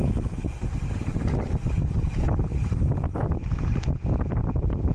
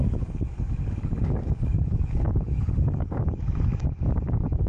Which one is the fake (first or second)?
second